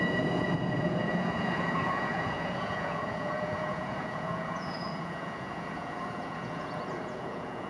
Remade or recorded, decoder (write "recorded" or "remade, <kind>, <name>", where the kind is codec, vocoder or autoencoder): remade, vocoder, Vocos